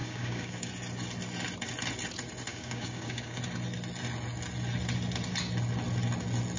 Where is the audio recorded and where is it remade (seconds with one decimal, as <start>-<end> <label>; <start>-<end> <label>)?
0.0-0.7 remade; 0.7-2.5 recorded; 2.5-3.4 remade; 3.4-6.6 recorded